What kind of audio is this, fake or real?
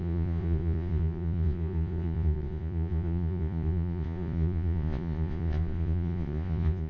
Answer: fake